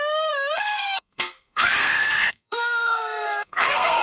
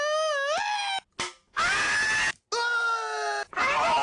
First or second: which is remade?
first